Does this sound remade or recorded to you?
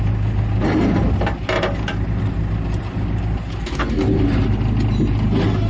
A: recorded